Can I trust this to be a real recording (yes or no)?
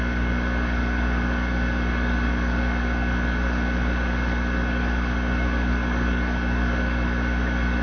no